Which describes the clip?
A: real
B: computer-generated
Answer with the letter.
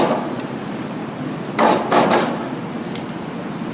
A